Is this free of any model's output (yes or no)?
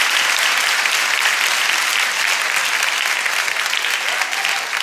yes